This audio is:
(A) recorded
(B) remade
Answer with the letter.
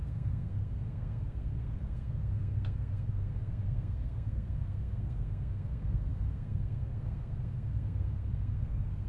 B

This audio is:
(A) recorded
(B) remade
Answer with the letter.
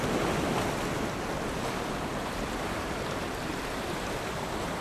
A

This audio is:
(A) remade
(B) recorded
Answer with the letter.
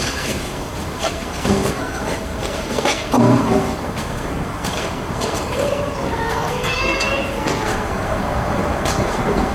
A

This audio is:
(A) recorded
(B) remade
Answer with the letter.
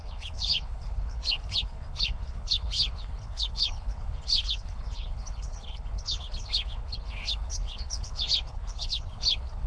B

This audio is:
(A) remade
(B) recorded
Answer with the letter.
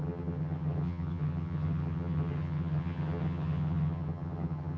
A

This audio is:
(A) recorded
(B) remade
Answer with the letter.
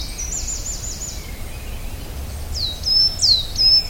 A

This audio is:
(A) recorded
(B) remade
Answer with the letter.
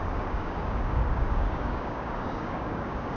B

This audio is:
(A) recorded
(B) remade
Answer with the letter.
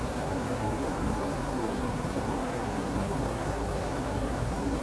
B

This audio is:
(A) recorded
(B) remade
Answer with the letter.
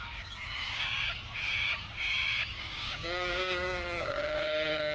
B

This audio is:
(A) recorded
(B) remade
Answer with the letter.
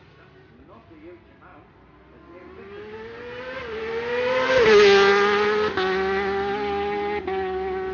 A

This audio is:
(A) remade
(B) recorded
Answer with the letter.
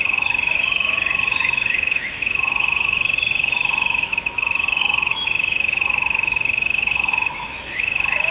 A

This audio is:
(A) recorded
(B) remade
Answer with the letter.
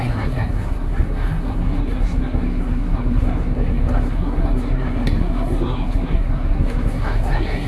B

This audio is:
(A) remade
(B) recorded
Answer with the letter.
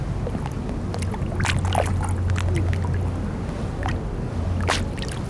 B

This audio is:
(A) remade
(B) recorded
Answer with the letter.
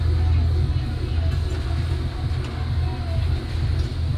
B